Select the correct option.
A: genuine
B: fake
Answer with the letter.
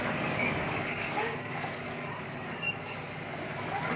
B